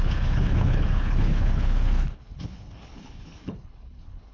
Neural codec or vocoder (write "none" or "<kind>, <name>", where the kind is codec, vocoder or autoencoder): codec, HILCodec